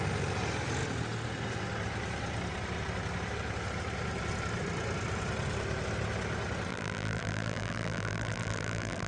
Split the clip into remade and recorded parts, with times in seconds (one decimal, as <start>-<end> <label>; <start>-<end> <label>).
0.0-6.7 recorded; 6.7-9.1 remade